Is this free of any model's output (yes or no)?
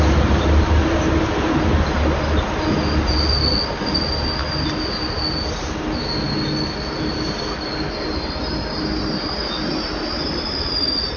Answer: yes